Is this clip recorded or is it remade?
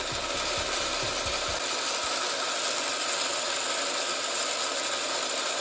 recorded